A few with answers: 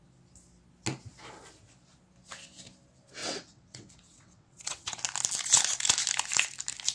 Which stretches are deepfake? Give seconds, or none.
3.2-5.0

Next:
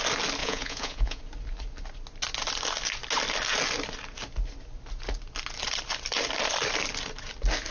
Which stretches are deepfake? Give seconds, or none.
0.4-1.2

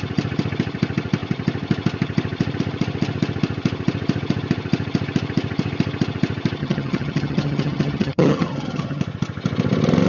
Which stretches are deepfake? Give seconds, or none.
6.6-9.0